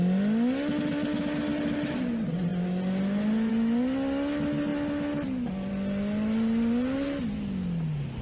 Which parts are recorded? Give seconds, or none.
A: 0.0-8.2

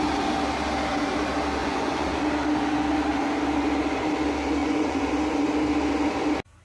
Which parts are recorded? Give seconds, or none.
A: 0.0-1.6; 2.2-4.6; 5.1-6.6